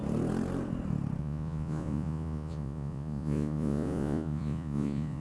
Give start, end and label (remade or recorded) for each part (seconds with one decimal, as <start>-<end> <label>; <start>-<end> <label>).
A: 0.0-1.2 recorded; 1.2-5.2 remade